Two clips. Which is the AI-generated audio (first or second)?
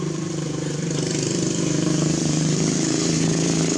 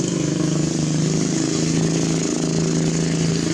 first